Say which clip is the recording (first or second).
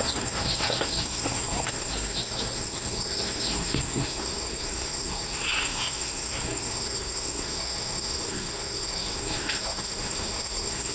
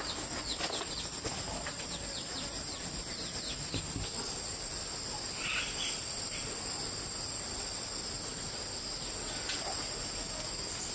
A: second